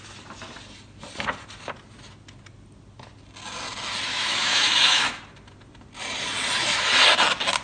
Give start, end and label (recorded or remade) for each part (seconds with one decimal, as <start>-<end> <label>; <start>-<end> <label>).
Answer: 0.0-4.1 recorded; 4.1-5.2 remade; 5.2-7.6 recorded